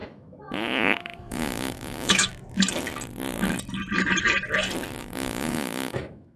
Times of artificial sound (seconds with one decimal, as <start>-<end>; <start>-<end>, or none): 0.0-2.3; 5.0-6.4

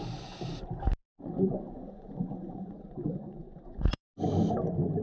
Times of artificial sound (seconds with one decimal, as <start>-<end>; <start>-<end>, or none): 1.0-4.0

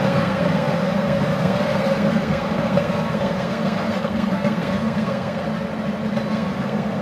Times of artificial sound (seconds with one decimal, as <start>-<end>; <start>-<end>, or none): 0.0-5.5; 6.3-7.0

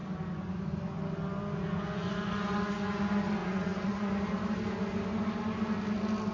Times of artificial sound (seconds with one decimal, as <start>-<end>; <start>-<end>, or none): 3.4-4.1

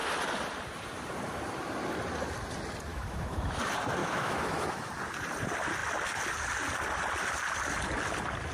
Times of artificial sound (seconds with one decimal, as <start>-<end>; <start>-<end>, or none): 2.9-3.6; 4.0-4.9